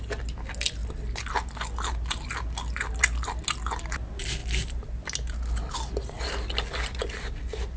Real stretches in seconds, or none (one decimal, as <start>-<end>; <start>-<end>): 0.0-7.8

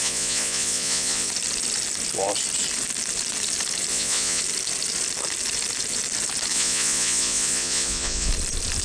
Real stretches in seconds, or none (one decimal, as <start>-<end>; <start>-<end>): 1.3-3.9; 4.4-6.5; 8.3-8.8

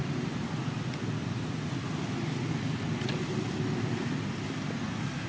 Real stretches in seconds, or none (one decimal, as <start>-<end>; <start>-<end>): 0.0-5.3

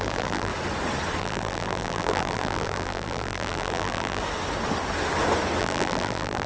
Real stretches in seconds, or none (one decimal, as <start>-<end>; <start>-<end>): 0.5-1.2; 4.2-5.6

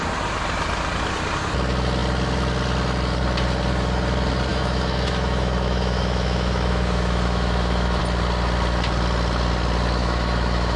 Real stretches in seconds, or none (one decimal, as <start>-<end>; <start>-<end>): 0.0-4.5; 8.0-10.0

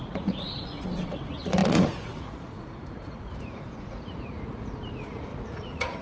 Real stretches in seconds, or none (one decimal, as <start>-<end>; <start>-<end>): none

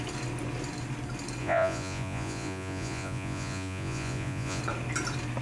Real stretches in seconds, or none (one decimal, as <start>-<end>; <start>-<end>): 0.0-1.4; 4.6-5.4